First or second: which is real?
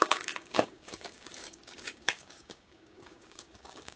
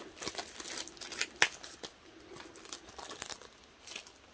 second